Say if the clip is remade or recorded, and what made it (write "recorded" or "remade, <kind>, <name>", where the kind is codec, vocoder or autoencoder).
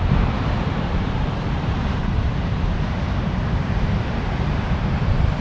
remade, vocoder, BigVGAN v2